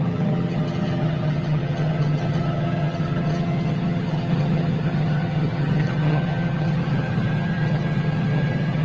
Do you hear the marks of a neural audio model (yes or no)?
yes